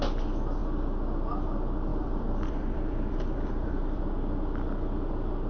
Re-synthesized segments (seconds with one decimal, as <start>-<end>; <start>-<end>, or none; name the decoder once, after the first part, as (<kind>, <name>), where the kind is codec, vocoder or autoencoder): 1.9-4.0 (vocoder, BigVGAN v2)